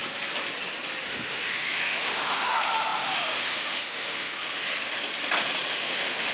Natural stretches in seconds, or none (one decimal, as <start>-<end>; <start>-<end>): 0.0-1.1; 4.6-5.7